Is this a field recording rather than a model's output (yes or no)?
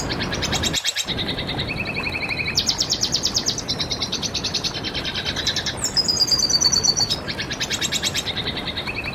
no